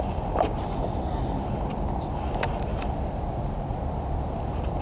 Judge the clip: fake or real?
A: real